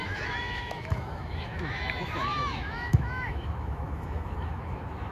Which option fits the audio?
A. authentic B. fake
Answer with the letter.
B